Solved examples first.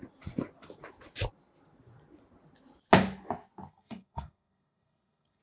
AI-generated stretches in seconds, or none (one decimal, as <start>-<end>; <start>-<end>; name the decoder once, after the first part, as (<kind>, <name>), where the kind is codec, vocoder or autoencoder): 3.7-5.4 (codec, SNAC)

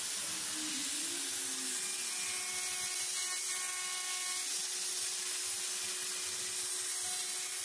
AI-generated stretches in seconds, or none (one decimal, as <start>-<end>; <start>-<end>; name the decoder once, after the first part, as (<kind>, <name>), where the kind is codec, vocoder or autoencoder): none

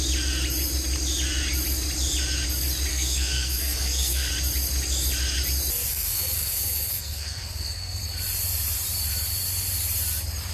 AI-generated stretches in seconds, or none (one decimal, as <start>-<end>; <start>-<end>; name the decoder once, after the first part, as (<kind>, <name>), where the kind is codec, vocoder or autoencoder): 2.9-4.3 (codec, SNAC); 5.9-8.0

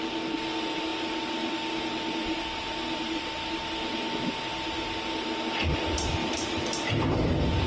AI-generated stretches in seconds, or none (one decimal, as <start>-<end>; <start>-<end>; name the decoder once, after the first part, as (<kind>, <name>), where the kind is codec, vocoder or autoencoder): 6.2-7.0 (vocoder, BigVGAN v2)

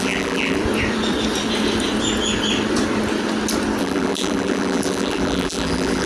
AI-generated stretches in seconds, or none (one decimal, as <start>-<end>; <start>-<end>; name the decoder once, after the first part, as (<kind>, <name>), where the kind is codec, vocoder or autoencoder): 0.0-0.6 (vocoder, BigVGAN v2); 3.8-6.1